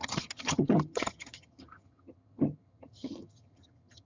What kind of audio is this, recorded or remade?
remade